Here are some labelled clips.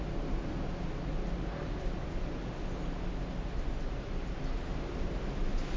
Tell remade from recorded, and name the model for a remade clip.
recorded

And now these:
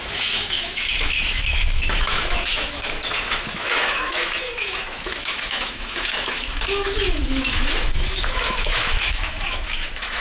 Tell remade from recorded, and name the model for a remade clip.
remade, autoencoder, DAC-VAE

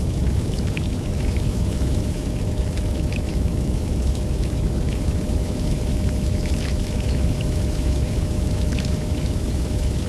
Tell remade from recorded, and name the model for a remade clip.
remade, autoencoder, DAC-VAE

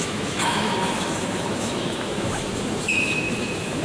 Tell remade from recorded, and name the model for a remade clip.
remade, autoencoder, DAC-VAE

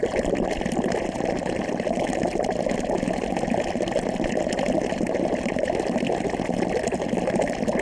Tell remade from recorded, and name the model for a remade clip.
recorded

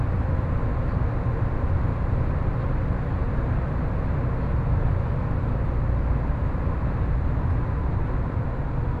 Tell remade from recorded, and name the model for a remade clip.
recorded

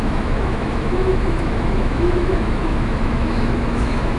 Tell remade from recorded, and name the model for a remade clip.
remade, autoencoder, DAC-VAE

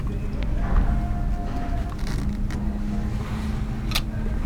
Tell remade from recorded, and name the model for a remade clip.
recorded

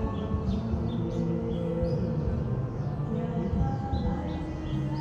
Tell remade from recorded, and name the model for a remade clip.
recorded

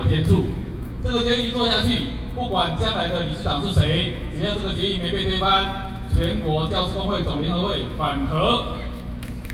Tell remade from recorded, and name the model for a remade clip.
remade, autoencoder, DAC-VAE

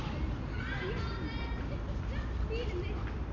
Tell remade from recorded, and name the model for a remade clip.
recorded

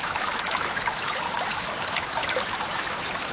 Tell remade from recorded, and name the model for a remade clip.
remade, autoencoder, DAC-VAE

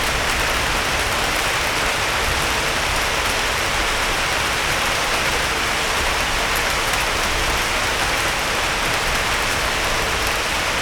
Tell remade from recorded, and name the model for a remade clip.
recorded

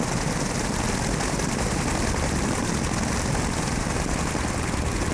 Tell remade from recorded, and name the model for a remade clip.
recorded